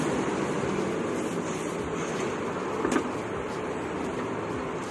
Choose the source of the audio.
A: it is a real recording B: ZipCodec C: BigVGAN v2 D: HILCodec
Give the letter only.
A